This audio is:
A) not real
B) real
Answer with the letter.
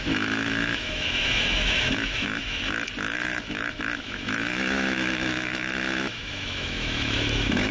A